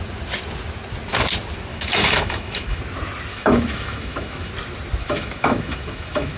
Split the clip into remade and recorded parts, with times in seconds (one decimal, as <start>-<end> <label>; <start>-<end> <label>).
0.0-1.7 recorded; 1.7-2.8 remade; 2.8-3.3 recorded; 3.3-4.5 remade; 4.5-5.0 recorded; 5.0-6.4 remade